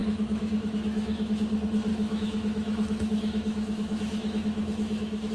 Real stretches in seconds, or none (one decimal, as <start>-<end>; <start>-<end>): 1.4-1.9

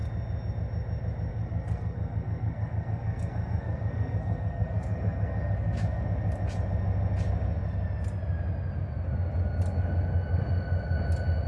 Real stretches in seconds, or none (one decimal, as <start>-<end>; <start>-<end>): 0.0-1.3; 6.0-11.5

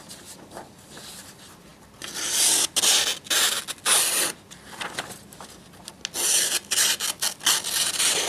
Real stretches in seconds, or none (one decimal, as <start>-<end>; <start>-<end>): 0.0-8.3